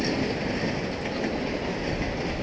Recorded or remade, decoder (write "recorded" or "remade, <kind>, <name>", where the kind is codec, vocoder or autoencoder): recorded